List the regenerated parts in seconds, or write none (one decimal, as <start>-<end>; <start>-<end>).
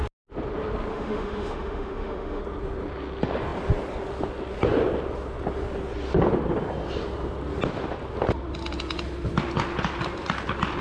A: 0.9-2.4